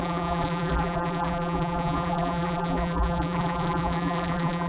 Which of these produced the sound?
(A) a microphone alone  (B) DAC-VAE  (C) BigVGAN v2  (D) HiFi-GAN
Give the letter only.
C